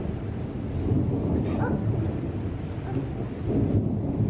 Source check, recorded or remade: recorded